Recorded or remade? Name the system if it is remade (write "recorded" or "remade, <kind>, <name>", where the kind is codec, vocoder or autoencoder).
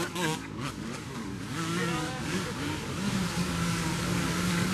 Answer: remade, codec, DAC